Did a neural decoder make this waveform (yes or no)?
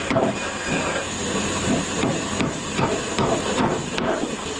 yes